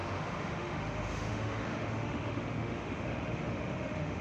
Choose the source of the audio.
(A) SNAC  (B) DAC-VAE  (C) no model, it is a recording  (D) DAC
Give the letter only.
B